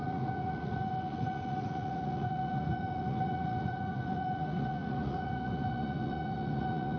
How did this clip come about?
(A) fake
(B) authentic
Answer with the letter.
A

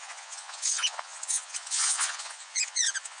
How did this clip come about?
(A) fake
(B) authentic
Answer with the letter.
A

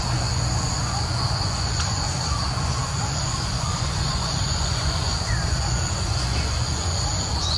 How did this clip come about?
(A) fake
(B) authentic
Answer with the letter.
A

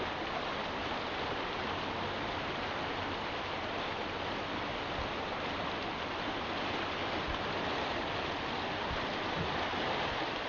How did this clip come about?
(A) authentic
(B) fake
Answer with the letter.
A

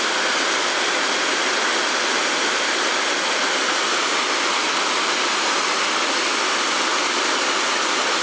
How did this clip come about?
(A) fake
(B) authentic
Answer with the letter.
B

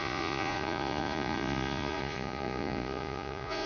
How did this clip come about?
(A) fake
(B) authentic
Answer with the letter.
A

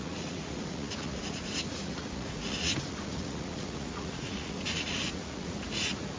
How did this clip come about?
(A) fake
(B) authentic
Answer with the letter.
A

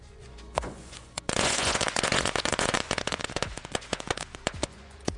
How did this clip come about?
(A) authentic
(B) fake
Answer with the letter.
B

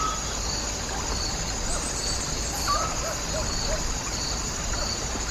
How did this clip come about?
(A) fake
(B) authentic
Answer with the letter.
B